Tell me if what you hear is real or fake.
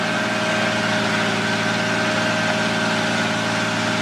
real